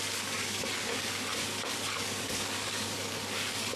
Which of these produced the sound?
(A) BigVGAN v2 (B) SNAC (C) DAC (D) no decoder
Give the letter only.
C